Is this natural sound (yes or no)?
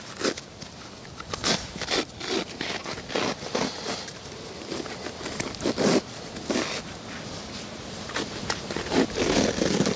yes